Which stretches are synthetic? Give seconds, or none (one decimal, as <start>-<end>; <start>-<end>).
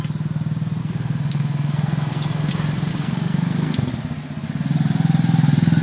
0.8-2.5; 2.9-3.9